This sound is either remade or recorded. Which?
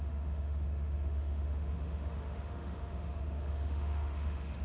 remade